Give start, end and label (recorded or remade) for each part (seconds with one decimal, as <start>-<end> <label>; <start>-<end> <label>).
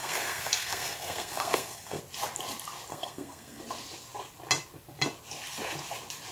0.0-2.0 remade; 2.0-2.9 recorded; 2.9-3.6 remade; 3.6-6.3 recorded